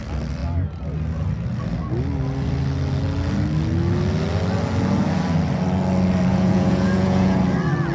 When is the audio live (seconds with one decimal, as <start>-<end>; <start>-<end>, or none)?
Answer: 0.0-6.3; 7.4-7.9